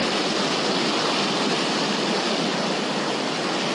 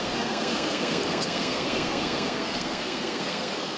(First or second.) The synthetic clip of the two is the second